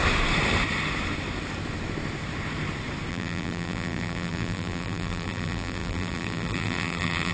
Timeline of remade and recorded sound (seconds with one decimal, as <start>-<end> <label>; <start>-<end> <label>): 0.0-3.1 recorded; 3.1-7.3 remade